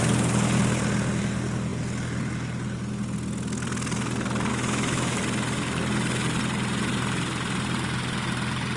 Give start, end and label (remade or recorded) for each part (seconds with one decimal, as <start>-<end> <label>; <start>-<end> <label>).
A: 0.0-4.5 recorded; 4.5-5.2 remade; 5.2-8.8 recorded